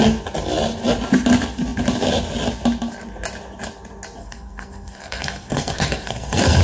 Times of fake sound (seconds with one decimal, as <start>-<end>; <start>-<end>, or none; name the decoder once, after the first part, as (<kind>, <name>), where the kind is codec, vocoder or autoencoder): 4.2-6.6 (codec, SNAC)